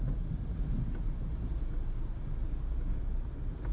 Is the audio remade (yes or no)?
no